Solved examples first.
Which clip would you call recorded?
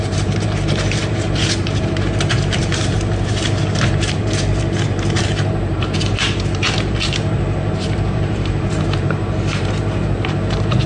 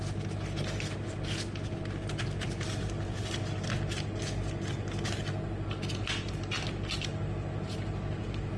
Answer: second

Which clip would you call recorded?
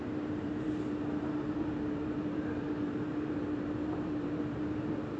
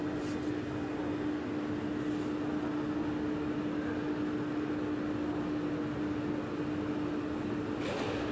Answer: second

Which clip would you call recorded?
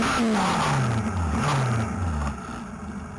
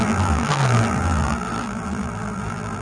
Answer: first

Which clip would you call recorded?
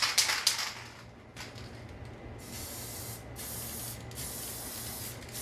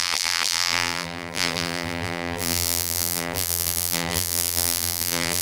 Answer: first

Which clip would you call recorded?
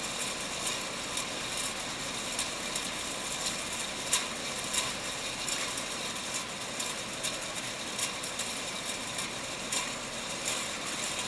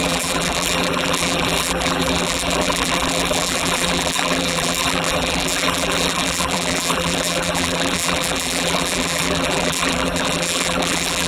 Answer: first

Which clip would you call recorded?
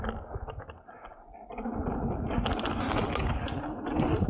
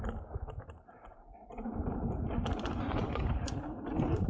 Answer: first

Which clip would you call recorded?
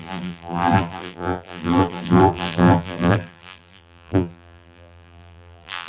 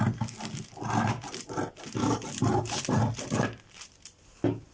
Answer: second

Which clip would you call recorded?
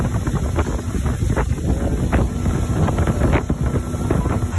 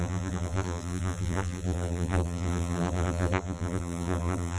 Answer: first